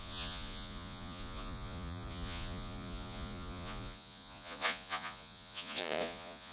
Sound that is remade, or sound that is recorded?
remade